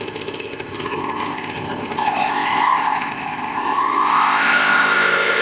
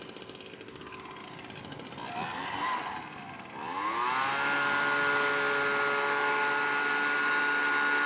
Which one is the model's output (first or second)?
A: first